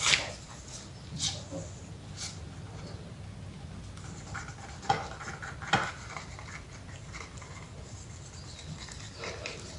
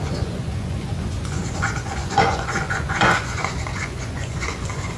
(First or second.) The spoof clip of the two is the second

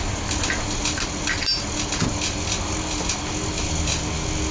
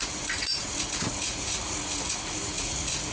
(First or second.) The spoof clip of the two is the second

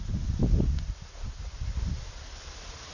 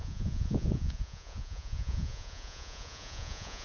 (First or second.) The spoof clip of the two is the second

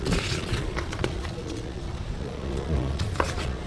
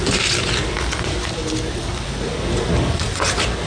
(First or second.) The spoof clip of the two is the first